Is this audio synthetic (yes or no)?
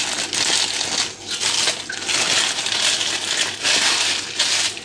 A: no